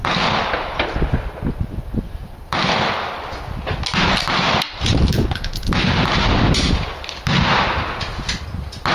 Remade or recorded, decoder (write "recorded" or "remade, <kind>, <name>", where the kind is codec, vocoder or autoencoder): recorded